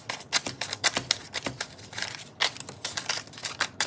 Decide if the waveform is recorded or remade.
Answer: recorded